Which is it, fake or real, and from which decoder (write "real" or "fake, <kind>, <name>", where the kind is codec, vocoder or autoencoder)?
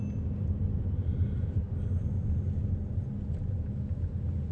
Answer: real